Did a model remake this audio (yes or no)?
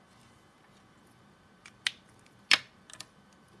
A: no